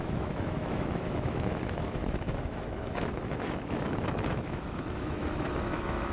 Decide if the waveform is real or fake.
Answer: fake